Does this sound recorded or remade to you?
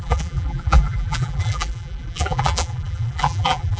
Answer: remade